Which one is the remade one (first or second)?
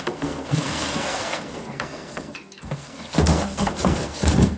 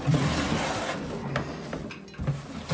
first